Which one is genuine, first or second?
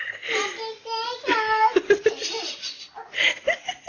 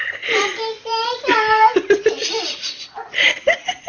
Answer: first